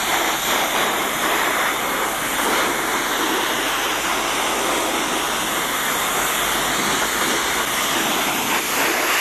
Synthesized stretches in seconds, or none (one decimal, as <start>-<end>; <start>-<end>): 0.0-4.1